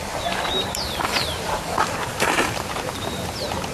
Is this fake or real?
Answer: fake